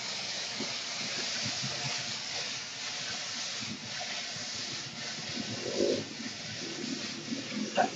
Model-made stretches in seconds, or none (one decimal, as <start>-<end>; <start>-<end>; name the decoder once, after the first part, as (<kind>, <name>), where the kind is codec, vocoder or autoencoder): 0.0-0.9 (codec, DAC); 1.7-2.7; 7.5-8.0